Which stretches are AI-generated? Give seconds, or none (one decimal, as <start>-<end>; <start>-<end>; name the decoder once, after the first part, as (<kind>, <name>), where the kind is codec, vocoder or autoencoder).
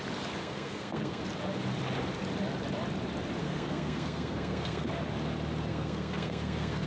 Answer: 0.4-1.2 (codec, SNAC); 3.4-4.9; 5.7-6.9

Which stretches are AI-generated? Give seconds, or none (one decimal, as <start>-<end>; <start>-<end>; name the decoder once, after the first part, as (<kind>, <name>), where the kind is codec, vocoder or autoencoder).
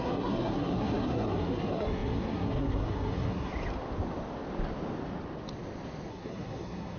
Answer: 0.0-3.5 (codec, SNAC); 6.1-7.0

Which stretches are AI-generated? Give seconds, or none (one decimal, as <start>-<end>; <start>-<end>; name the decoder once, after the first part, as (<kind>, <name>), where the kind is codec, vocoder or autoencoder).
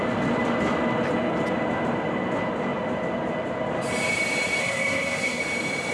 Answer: 4.6-5.4 (codec, SNAC)